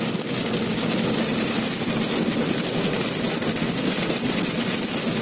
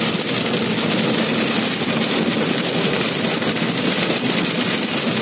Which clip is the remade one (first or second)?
second